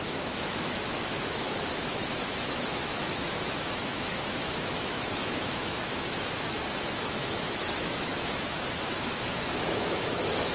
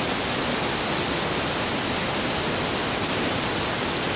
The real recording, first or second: second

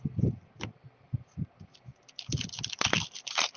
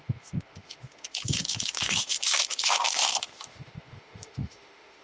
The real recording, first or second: first